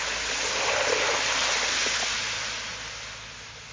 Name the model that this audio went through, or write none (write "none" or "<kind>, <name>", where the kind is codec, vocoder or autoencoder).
none